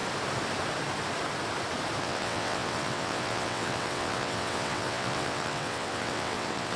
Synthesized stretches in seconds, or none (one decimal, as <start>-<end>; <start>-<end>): 2.0-6.8